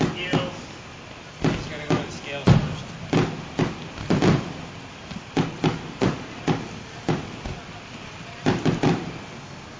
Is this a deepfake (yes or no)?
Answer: no